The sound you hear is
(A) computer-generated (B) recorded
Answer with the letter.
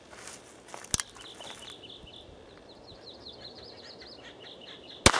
B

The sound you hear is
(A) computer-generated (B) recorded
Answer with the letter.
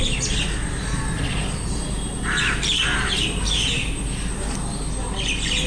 B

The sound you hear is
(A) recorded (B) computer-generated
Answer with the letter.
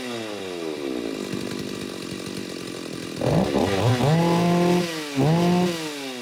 A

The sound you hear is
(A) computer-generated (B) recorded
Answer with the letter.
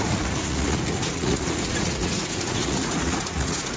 A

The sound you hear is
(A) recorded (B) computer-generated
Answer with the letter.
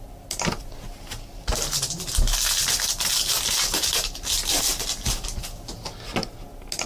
A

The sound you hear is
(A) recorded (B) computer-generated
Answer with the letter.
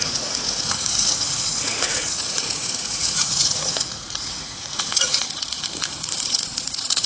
B